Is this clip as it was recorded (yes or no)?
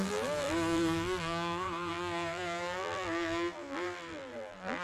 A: no